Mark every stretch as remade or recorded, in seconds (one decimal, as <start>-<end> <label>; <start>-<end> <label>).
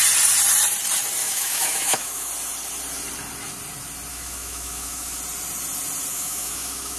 0.0-1.2 recorded; 1.2-2.3 remade; 2.3-4.1 recorded; 4.1-5.2 remade; 5.2-6.1 recorded; 6.1-7.0 remade